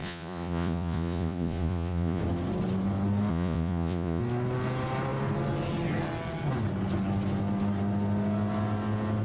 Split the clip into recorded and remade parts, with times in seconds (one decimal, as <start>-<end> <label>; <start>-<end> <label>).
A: 0.0-2.2 remade; 2.2-3.3 recorded; 3.3-4.2 remade; 4.2-9.2 recorded